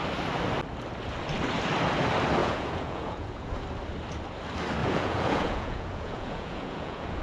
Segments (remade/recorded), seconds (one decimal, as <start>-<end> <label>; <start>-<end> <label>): 0.0-2.4 recorded; 2.4-3.5 remade; 3.5-4.8 recorded; 4.8-7.2 remade